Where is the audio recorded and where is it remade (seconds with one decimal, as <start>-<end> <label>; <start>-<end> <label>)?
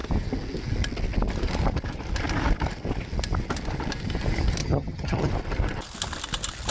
0.0-4.6 recorded; 4.6-5.3 remade; 5.3-6.7 recorded